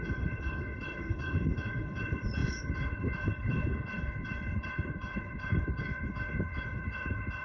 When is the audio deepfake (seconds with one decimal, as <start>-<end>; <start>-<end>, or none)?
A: 0.0-7.4

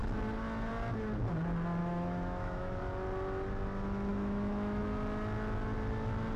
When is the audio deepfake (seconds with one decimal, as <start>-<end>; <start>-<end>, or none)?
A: 1.8-2.8; 4.1-4.8

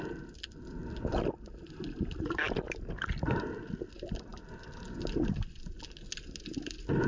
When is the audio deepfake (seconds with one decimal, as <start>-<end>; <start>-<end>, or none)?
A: none

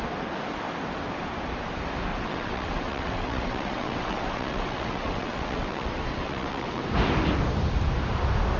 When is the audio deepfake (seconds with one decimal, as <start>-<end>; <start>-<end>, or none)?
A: 2.1-6.8

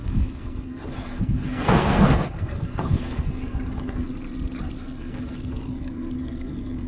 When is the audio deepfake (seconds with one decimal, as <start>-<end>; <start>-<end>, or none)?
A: 0.0-4.1; 4.8-6.9

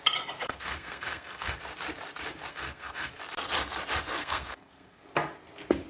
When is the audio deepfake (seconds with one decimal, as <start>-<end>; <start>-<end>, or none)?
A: 0.4-1.6; 2.5-3.1; 4.2-5.0

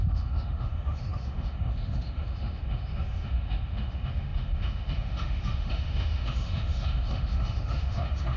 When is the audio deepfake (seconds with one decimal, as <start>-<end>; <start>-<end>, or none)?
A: 0.0-8.4

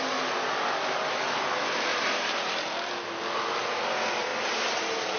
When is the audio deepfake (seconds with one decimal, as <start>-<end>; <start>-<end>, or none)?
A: 1.9-2.9; 4.3-5.2